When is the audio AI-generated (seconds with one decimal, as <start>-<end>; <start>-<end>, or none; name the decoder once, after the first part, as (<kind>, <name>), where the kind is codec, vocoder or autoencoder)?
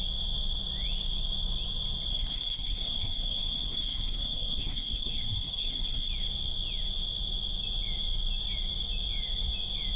2.1-6.1 (codec, SNAC)